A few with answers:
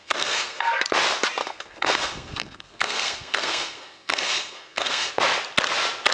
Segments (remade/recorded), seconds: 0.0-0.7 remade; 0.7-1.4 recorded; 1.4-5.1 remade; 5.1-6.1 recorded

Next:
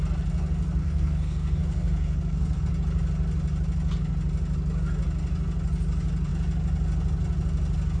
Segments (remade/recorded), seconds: 0.0-0.8 recorded; 0.8-2.6 remade; 2.6-8.0 recorded

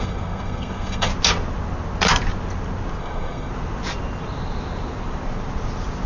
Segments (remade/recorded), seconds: 0.0-1.1 remade; 1.1-3.0 recorded; 3.0-3.5 remade; 3.5-6.1 recorded

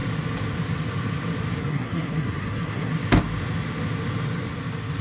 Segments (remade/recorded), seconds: 0.0-1.6 recorded; 1.6-2.9 remade; 2.9-5.0 recorded

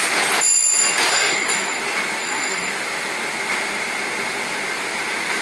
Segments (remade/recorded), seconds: 0.0-1.1 recorded; 1.1-1.8 remade; 1.8-2.2 recorded; 2.2-2.7 remade; 2.7-5.4 recorded

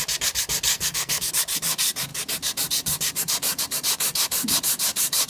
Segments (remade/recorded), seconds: 0.0-0.7 recorded; 0.7-1.3 remade; 1.3-5.3 recorded